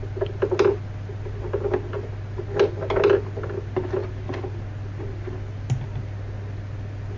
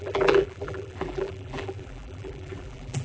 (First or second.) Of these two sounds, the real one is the first